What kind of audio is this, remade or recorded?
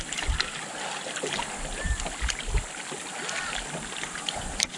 recorded